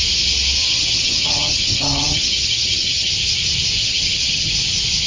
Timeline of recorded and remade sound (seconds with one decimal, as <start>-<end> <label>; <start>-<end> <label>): 0.0-0.6 recorded; 0.6-3.1 remade; 3.1-3.8 recorded; 3.8-4.5 remade; 4.5-5.1 recorded